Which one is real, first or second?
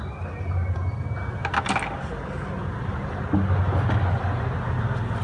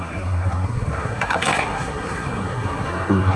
first